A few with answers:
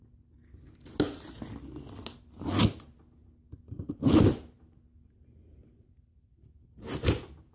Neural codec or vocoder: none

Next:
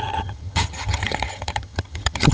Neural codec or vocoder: vocoder, HiFi-GAN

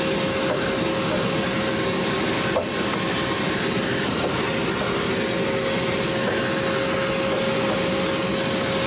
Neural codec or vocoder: none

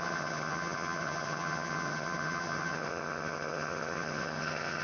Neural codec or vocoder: vocoder, HiFi-GAN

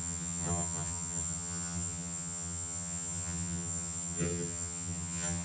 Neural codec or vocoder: vocoder, HiFi-GAN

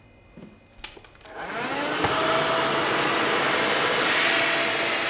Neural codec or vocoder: none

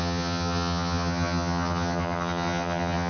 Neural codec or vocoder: vocoder, HiFi-GAN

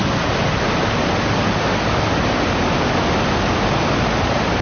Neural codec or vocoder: none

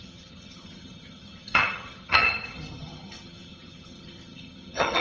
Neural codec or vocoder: vocoder, HiFi-GAN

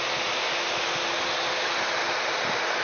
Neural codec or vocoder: none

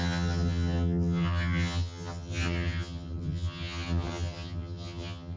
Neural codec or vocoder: vocoder, HiFi-GAN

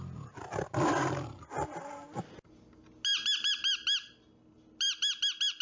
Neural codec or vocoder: none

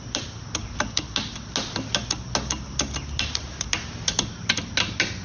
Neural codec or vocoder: none